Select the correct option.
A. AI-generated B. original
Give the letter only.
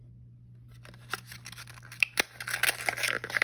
B